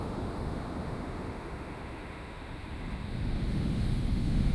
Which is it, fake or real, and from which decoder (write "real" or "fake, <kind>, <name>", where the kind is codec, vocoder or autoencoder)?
fake, autoencoder, DAC-VAE